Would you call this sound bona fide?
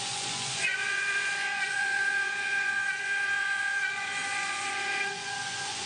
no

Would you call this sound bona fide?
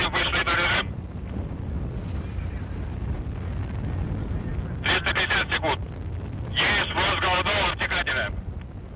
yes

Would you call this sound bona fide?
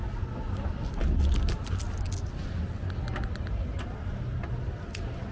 yes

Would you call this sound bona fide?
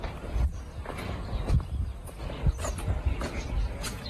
yes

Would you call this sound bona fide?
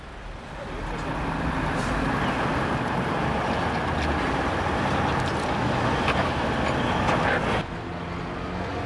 yes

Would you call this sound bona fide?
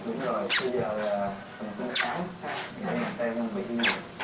yes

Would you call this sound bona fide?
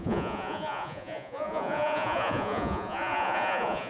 no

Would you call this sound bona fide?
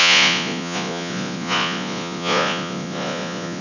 no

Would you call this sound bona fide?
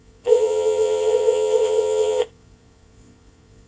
no